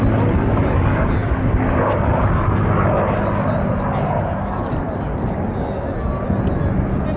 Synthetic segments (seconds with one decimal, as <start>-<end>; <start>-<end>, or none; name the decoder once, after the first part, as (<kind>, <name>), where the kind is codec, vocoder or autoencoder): none